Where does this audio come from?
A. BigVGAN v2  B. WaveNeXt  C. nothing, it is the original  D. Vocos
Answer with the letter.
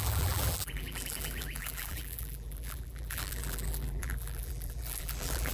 A